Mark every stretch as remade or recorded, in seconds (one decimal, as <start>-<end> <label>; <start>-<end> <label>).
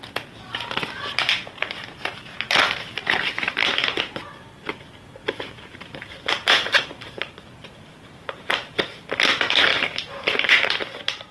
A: 0.0-3.0 recorded; 3.0-4.0 remade; 4.0-5.2 recorded; 5.2-9.0 remade; 9.0-9.7 recorded; 9.7-10.7 remade; 10.7-11.3 recorded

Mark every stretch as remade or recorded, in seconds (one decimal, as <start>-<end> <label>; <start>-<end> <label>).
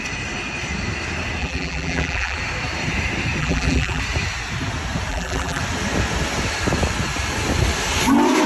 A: 0.0-1.4 recorded; 1.4-2.4 remade; 2.4-3.4 recorded; 3.4-4.0 remade; 4.0-5.1 recorded; 5.1-5.6 remade; 5.6-8.5 recorded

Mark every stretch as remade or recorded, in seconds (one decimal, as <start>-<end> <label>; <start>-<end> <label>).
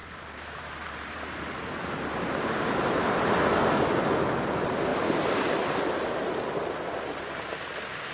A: 0.0-1.7 remade; 1.7-4.9 recorded; 4.9-5.5 remade; 5.5-8.1 recorded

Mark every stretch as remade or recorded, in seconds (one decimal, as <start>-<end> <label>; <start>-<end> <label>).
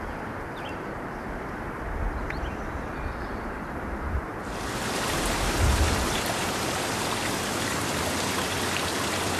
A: 0.0-9.4 remade